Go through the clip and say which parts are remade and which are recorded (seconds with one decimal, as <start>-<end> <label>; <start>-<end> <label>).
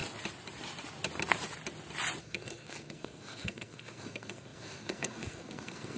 0.0-2.2 recorded; 2.2-6.0 remade